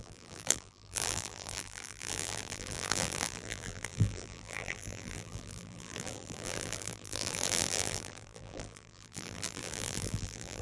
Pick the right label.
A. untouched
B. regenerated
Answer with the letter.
B